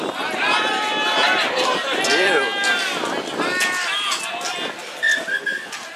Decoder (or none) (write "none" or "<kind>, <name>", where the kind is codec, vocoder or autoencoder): none